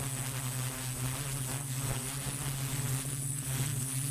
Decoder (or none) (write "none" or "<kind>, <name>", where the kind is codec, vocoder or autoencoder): none